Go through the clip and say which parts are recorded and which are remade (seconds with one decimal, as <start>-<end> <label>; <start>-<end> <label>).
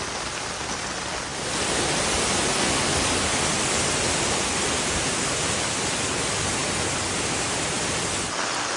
0.0-1.3 recorded; 1.3-1.8 remade; 1.8-8.8 recorded